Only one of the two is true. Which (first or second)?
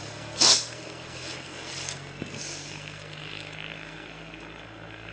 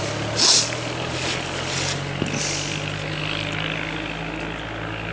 second